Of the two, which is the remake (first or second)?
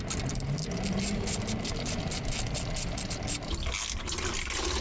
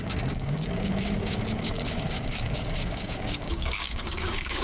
second